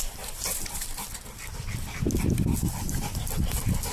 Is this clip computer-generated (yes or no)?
no